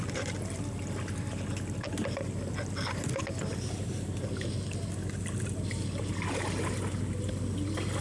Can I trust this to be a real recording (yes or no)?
yes